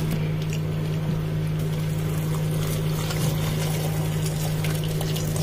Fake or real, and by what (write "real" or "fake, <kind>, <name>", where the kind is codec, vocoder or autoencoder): real